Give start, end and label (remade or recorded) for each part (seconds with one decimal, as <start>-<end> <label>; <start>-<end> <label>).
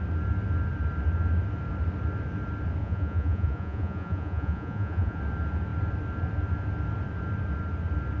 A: 0.0-2.8 recorded; 2.8-5.2 remade; 5.2-8.2 recorded